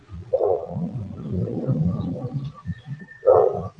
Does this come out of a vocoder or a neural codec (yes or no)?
yes